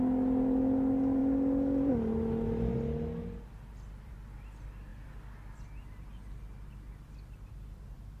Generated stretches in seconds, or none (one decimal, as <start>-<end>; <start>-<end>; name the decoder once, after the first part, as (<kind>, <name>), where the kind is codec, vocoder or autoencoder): none